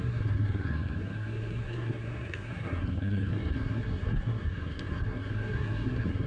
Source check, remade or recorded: remade